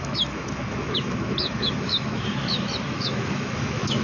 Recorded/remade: remade